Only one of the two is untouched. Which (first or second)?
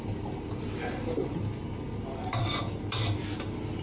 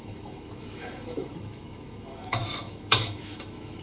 first